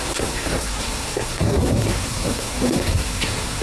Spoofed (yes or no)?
yes